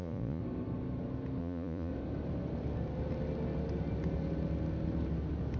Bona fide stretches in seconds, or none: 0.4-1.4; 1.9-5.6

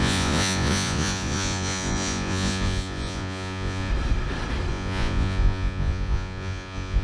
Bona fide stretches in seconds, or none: 3.9-4.7